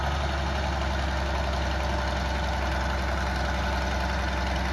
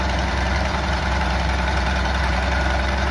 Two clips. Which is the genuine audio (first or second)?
first